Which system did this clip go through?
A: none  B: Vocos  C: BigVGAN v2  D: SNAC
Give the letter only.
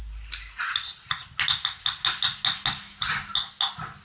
A